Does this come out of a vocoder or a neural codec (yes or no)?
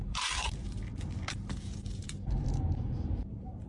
yes